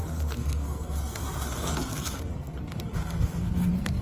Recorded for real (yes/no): no